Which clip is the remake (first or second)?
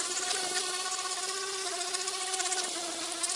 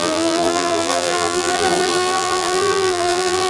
second